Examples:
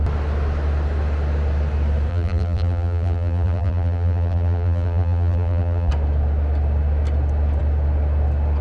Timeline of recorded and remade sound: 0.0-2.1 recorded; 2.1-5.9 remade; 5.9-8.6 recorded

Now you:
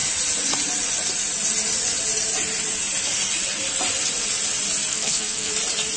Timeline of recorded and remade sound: 0.0-4.9 recorded; 4.9-5.5 remade; 5.5-6.0 recorded

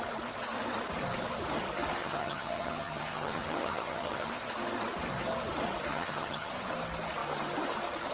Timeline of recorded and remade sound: 0.0-2.0 recorded; 2.0-4.3 remade; 4.3-5.9 recorded; 5.9-6.5 remade; 6.5-8.1 recorded

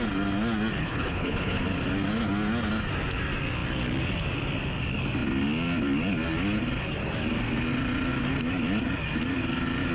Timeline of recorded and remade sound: 0.0-0.8 recorded; 0.8-1.6 remade; 1.6-9.9 recorded

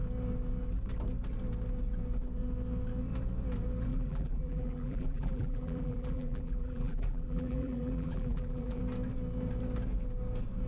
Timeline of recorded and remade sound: 0.0-3.9 recorded; 3.9-8.8 remade; 8.8-10.7 recorded

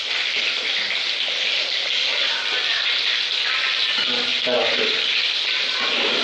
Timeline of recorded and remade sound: 0.0-6.2 recorded

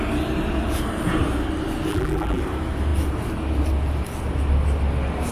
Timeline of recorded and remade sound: 0.0-1.9 recorded; 1.9-2.4 remade; 2.4-5.3 recorded